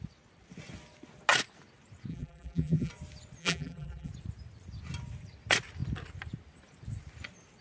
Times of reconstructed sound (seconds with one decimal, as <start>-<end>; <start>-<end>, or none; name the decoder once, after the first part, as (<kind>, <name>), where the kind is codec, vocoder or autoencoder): 2.1-2.9 (vocoder, BigVGAN v2); 3.4-4.1